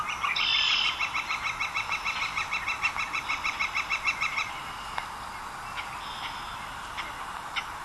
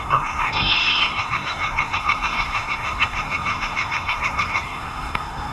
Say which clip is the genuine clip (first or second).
first